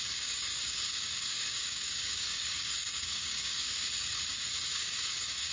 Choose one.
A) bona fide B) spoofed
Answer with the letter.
B